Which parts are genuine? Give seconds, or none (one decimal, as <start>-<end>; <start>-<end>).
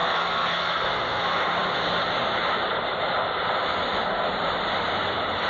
1.2-5.5